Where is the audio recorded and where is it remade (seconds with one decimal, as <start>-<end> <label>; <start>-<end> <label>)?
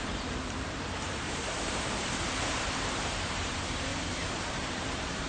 0.0-3.9 remade; 3.9-4.5 recorded; 4.5-5.3 remade